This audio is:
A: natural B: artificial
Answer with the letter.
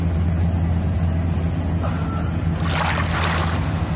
A